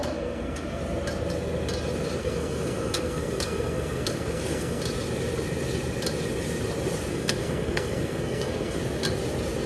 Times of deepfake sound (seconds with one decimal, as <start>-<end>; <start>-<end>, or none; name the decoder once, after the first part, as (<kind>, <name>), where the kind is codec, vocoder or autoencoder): 0.0-0.8 (codec, SNAC); 2.2-4.8; 7.1-8.8